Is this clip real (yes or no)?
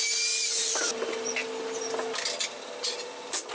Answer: yes